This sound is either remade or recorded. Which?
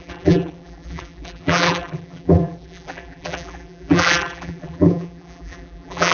remade